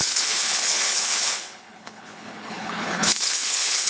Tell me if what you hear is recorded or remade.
remade